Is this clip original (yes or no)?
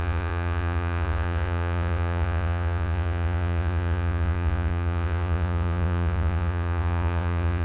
no